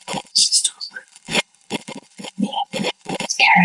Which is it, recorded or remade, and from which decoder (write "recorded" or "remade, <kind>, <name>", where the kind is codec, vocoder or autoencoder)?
remade, codec, HILCodec